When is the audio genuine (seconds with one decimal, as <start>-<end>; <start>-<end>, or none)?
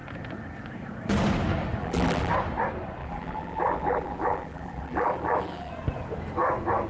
0.0-1.8; 2.3-3.0; 5.7-6.9